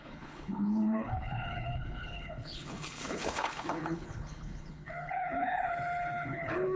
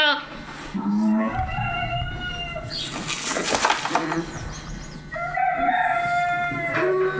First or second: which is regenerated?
first